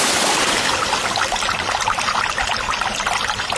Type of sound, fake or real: real